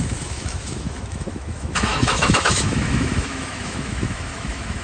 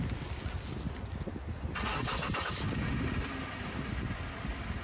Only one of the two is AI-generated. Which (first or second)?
first